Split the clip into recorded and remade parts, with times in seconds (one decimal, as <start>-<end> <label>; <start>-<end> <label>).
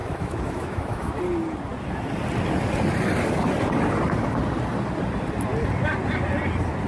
0.0-1.2 remade; 1.2-6.9 recorded